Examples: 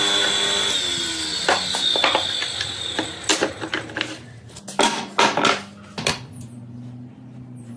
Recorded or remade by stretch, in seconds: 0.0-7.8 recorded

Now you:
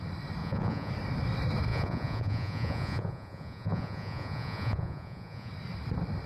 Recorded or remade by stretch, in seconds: 0.0-0.4 recorded; 0.4-0.9 remade; 0.9-1.7 recorded; 1.7-5.5 remade; 5.5-6.3 recorded

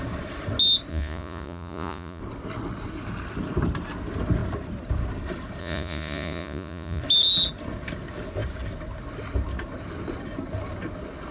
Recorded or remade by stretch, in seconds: 0.0-0.9 recorded; 0.9-2.2 remade; 2.2-5.6 recorded; 5.6-7.0 remade; 7.0-11.3 recorded